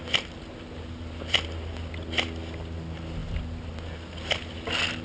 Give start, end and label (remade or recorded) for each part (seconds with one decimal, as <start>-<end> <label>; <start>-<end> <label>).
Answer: 0.0-5.0 recorded